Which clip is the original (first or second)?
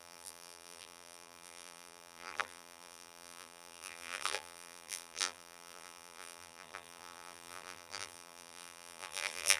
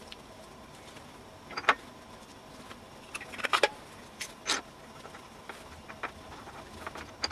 second